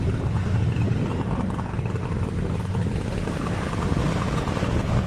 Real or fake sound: real